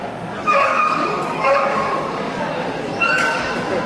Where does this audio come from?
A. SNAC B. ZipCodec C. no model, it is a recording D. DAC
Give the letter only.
D